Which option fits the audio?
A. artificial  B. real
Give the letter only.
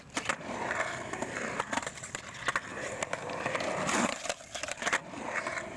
A